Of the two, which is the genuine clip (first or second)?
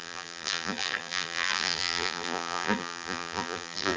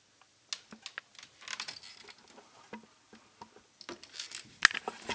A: second